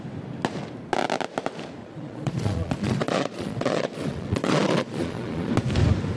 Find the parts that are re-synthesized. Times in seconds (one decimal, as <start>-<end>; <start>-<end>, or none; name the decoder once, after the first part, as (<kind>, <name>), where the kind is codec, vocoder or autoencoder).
1.8-5.5 (vocoder, Vocos)